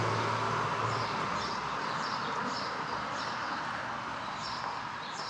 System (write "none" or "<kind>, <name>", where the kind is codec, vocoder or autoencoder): none